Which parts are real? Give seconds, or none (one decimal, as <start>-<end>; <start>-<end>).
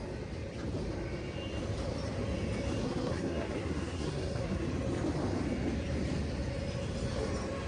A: 0.0-2.8; 4.6-7.7